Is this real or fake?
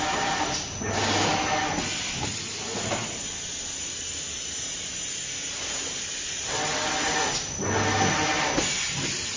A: real